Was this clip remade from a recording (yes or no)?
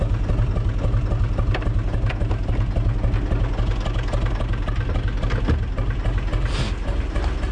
no